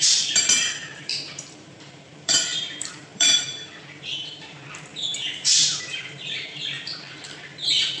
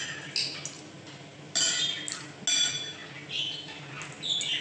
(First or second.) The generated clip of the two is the first